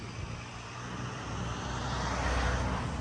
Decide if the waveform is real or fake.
real